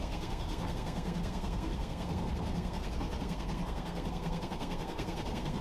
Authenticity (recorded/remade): remade